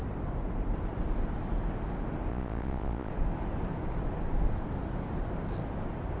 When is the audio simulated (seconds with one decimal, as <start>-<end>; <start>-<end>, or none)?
2.3-3.1